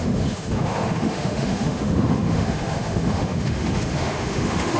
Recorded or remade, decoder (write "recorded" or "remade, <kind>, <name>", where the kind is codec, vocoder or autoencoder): remade, autoencoder, DAC-VAE